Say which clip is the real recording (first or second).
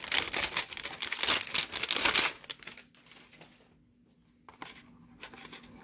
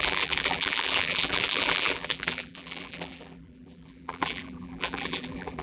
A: first